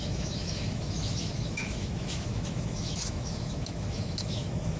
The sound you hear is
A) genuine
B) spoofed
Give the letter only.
B